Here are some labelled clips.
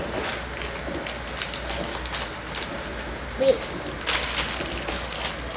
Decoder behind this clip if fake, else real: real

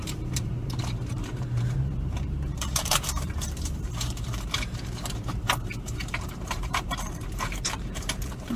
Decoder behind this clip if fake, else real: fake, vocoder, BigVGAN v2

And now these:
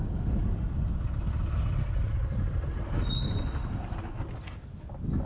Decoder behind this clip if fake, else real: real